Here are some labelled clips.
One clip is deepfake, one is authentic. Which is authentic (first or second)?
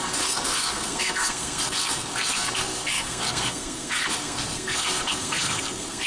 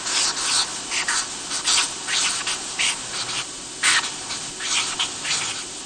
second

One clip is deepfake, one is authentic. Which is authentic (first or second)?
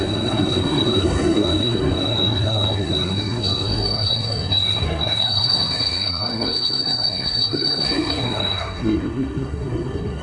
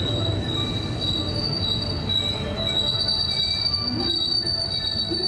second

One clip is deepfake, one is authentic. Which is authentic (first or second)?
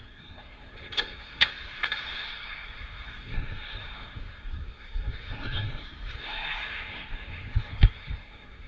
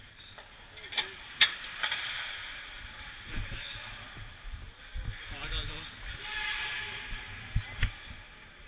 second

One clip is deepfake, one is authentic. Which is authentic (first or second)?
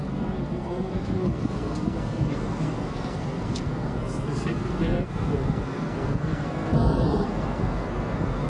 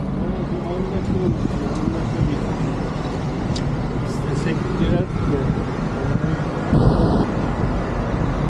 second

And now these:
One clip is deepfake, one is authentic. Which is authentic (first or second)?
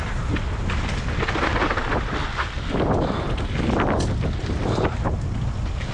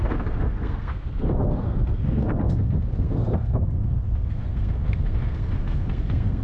first